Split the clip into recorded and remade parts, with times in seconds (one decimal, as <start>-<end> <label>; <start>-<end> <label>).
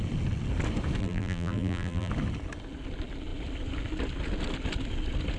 0.0-1.0 recorded; 1.0-2.1 remade; 2.1-5.4 recorded